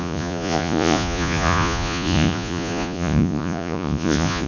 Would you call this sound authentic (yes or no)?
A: no